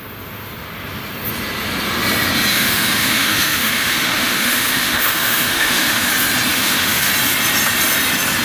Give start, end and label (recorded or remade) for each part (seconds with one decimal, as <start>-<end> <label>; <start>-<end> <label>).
0.0-2.5 recorded; 2.5-6.1 remade; 6.1-6.5 recorded; 6.5-7.1 remade; 7.1-8.4 recorded